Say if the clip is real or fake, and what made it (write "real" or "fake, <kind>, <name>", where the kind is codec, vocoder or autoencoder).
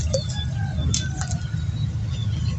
real